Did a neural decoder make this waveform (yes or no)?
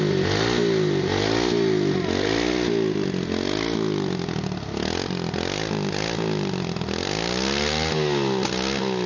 no